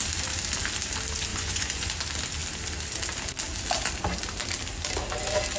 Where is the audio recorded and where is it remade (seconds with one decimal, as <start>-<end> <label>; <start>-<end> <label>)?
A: 0.0-1.3 recorded; 1.3-1.9 remade; 1.9-5.6 recorded